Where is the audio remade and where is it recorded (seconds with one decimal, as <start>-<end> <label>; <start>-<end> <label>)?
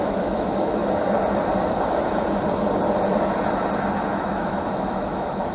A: 0.0-0.8 remade; 0.8-4.1 recorded; 4.1-5.5 remade